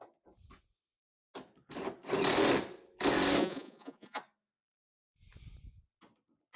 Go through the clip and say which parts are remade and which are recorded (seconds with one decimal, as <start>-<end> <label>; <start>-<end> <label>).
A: 0.0-3.4 recorded; 3.4-4.2 remade; 4.2-6.6 recorded